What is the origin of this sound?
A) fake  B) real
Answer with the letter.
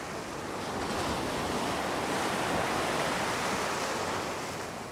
B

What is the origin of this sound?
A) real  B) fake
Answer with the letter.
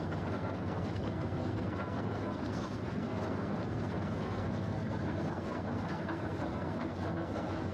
B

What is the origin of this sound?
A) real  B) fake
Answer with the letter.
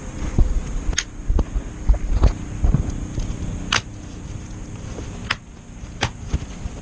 A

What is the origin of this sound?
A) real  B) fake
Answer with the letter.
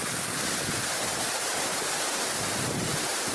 A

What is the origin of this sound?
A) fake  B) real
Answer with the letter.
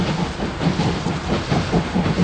B